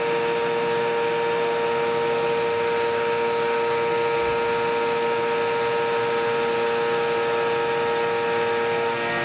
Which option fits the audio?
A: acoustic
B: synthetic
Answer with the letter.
A